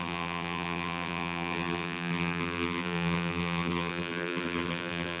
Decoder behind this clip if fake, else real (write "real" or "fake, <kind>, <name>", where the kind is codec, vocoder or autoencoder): fake, vocoder, BigVGAN v2